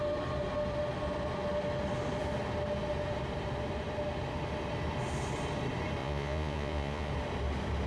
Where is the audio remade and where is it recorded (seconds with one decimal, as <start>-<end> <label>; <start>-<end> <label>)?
0.0-6.0 recorded; 6.0-7.1 remade; 7.1-7.9 recorded